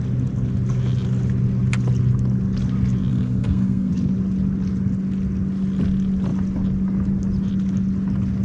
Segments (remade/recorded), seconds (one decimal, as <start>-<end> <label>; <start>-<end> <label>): 0.0-3.1 recorded; 3.1-3.9 remade; 3.9-8.4 recorded